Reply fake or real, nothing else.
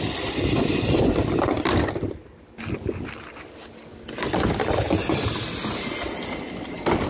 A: real